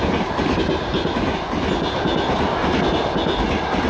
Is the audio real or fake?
real